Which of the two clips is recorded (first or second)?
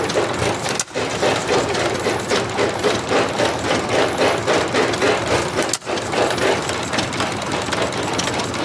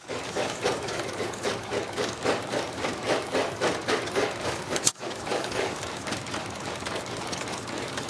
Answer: first